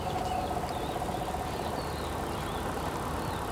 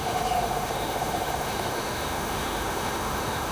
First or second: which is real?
first